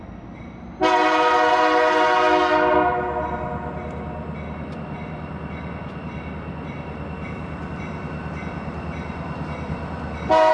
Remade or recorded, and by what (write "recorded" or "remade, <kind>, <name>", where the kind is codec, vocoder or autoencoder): recorded